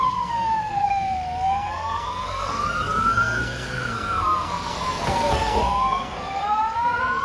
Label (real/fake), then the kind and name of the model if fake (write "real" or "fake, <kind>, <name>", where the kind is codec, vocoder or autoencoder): fake, codec, SNAC